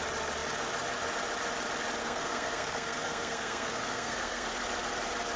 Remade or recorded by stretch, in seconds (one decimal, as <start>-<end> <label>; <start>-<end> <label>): 0.0-2.0 recorded; 2.0-4.5 remade; 4.5-5.4 recorded